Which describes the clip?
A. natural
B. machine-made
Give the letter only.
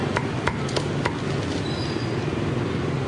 A